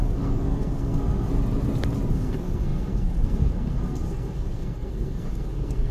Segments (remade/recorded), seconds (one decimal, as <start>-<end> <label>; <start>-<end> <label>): 0.0-1.3 remade; 1.3-2.1 recorded; 2.1-5.9 remade